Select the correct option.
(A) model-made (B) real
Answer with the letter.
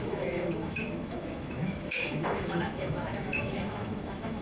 A